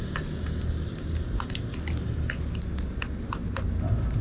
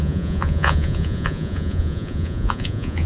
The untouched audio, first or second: first